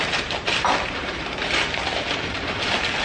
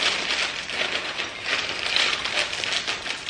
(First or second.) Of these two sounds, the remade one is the first